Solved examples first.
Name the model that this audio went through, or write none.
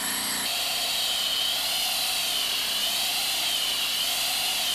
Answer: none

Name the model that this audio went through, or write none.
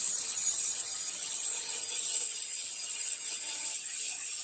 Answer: vocoder, HiFi-GAN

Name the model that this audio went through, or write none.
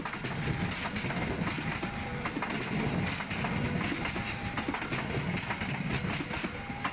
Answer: none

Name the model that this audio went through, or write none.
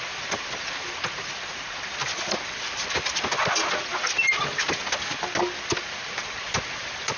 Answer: none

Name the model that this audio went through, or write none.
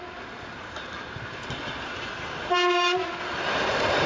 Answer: none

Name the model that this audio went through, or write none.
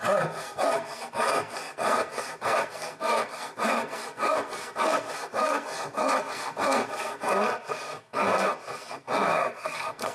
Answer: codec, SNAC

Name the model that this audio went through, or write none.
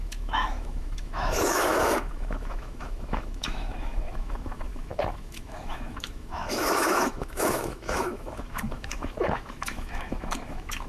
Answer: autoencoder, DAC-VAE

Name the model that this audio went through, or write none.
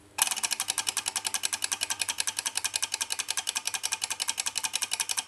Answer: none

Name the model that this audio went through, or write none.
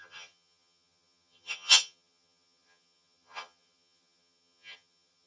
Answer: vocoder, HiFi-GAN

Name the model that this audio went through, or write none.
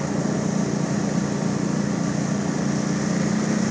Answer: none